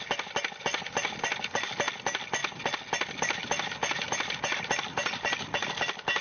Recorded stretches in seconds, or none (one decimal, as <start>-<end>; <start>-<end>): 0.0-6.2